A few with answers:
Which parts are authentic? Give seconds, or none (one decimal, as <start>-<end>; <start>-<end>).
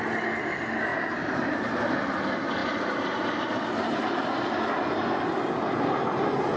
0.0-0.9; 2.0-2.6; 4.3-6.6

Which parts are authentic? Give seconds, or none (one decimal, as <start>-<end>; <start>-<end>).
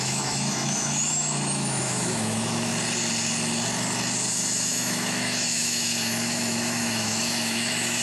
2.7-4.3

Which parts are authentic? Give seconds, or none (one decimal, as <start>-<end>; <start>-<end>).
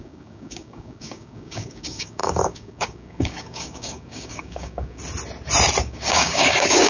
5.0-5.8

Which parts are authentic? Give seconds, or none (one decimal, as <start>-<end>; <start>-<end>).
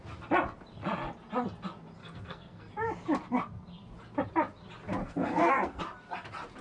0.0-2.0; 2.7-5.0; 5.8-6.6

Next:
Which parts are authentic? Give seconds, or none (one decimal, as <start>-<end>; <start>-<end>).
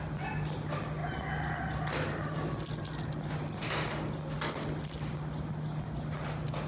0.0-6.7